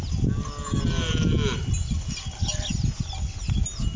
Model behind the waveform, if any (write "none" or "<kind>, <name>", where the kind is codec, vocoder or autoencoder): none